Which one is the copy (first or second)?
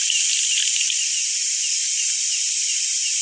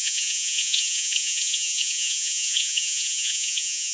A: second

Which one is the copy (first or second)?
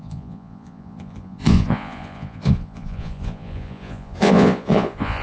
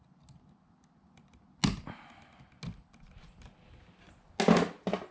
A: first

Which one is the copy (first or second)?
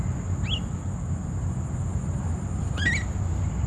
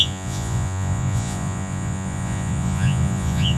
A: second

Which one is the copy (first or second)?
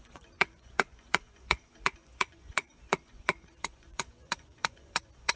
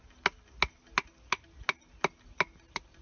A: first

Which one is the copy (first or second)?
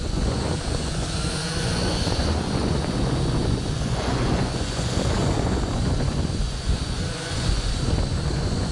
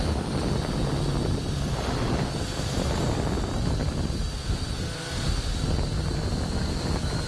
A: first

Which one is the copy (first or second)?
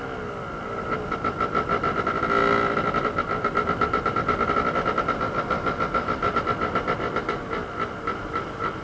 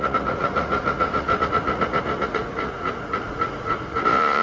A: second